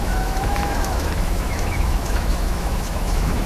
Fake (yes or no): yes